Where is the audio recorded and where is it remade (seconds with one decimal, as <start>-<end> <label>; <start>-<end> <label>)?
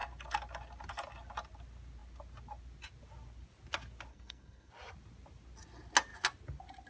0.0-4.1 recorded; 4.1-4.7 remade; 4.7-6.9 recorded